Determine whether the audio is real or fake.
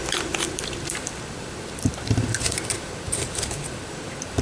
fake